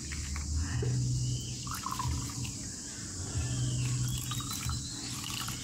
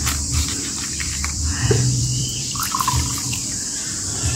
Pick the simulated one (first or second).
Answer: second